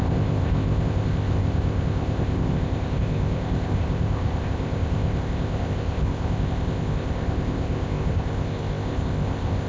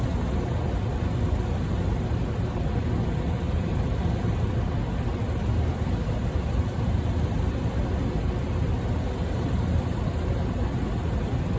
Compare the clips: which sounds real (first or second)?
second